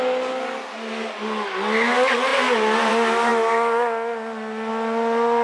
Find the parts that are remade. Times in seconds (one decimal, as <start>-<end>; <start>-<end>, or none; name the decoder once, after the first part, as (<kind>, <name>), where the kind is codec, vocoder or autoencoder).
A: none